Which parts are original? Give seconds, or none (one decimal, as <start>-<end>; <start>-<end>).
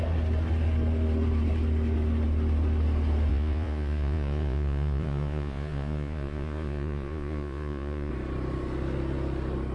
0.0-3.3; 8.1-9.7